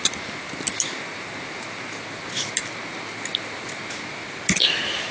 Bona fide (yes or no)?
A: yes